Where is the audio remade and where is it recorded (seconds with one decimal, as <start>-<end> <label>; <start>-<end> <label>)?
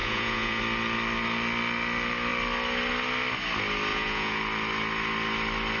0.0-0.6 remade; 0.6-3.9 recorded; 3.9-4.4 remade; 4.4-5.8 recorded